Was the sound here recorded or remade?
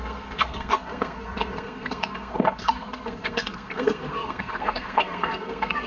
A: remade